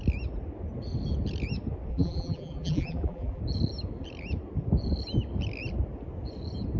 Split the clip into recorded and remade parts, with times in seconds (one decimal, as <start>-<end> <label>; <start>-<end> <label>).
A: 0.0-1.9 recorded; 1.9-3.4 remade; 3.4-6.8 recorded

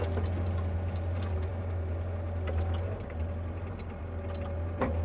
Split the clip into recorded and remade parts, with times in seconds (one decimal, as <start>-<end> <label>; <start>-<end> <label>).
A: 0.0-5.0 recorded

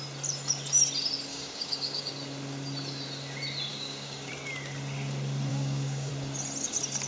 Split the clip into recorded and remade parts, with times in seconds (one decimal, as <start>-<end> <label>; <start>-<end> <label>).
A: 0.0-1.3 recorded; 1.3-2.1 remade; 2.1-3.7 recorded; 3.7-4.3 remade; 4.3-5.5 recorded; 5.5-6.1 remade; 6.1-7.1 recorded

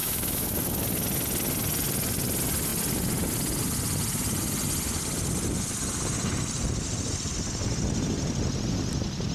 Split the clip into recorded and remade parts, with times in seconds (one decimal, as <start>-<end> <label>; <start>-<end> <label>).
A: 0.0-0.5 remade; 0.5-9.3 recorded

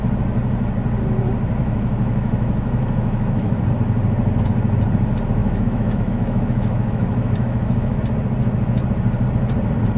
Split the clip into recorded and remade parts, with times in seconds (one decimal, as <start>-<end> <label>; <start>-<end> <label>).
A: 0.0-1.6 recorded; 1.6-3.6 remade; 3.6-5.4 recorded; 5.4-8.0 remade; 8.0-10.0 recorded

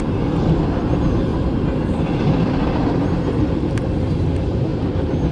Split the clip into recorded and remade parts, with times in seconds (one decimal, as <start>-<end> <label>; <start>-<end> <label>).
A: 0.0-1.3 recorded; 1.3-3.1 remade; 3.1-4.7 recorded; 4.7-5.3 remade

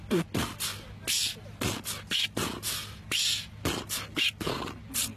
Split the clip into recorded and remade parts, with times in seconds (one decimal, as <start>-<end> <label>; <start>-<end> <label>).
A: 0.0-5.2 recorded